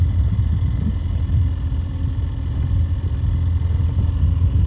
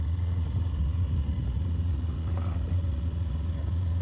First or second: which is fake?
second